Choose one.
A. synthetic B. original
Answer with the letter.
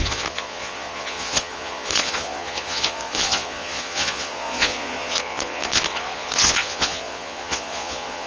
A